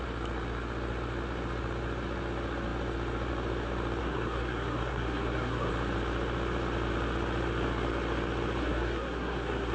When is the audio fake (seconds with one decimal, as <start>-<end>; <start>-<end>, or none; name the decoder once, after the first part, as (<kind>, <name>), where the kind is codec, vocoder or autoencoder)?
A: 4.0-5.7 (codec, SNAC); 8.6-9.7